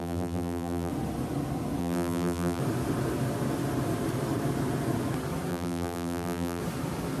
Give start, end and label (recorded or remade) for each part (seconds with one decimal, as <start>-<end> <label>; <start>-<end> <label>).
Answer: 0.0-0.9 remade; 0.9-1.8 recorded; 1.8-2.6 remade; 2.6-5.5 recorded; 5.5-6.6 remade; 6.6-7.2 recorded